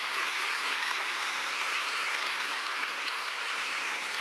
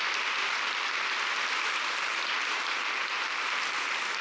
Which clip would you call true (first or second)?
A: second